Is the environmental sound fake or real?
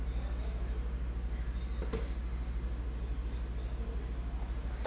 real